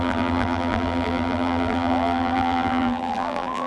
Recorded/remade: remade